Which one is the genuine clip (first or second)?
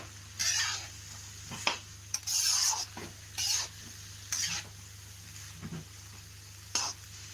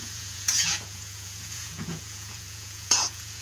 first